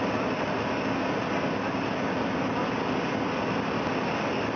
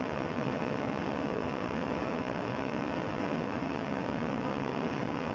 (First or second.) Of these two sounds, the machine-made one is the second